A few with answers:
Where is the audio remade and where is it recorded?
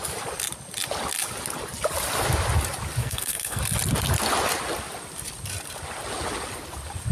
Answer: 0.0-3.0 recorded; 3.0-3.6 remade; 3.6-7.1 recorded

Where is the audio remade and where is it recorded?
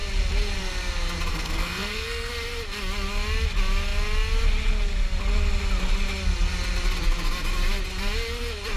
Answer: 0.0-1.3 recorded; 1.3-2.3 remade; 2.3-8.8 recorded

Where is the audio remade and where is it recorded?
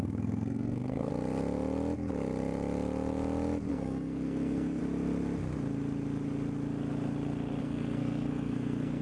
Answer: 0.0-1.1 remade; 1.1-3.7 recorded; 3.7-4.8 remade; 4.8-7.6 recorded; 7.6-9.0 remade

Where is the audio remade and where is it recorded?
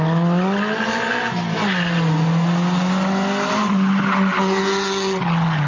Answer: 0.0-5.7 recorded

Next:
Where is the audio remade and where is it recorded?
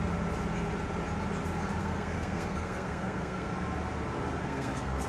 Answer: 0.0-1.8 recorded; 1.8-3.5 remade; 3.5-4.4 recorded; 4.4-5.1 remade